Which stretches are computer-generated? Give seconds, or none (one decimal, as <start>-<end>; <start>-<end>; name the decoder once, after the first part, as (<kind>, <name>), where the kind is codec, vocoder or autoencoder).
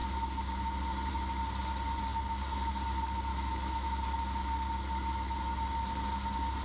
3.3-4.0 (autoencoder, DAC-VAE)